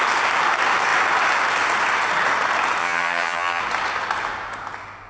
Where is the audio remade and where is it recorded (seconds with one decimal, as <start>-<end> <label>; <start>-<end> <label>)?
0.0-2.8 recorded; 2.8-3.6 remade; 3.6-5.1 recorded